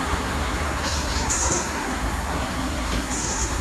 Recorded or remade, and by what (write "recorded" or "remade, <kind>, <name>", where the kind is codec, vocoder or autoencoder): remade, codec, SNAC